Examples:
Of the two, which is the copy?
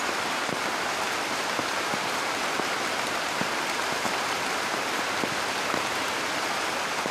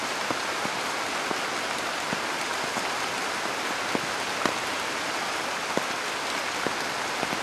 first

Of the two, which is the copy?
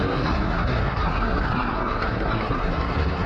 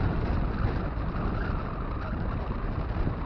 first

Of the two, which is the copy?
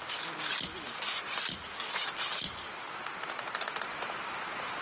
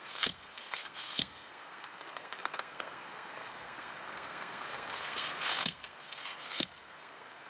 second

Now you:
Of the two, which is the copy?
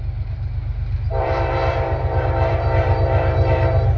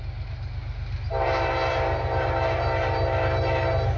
first